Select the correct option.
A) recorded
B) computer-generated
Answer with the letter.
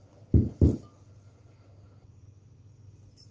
A